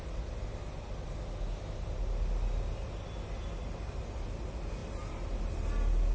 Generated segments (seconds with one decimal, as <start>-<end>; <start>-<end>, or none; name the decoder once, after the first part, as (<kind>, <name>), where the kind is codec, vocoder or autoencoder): none